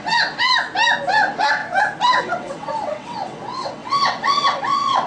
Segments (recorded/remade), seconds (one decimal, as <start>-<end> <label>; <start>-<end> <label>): 0.0-0.5 remade; 0.5-1.1 recorded; 1.1-1.6 remade; 1.6-2.2 recorded; 2.2-5.1 remade